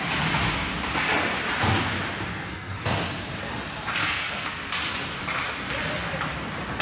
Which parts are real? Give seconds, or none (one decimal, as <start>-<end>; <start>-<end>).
0.0-2.3; 2.8-4.0; 4.6-6.8